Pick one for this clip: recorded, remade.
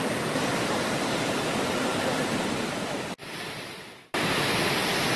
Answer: remade